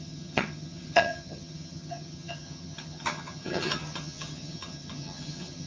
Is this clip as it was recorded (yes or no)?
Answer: no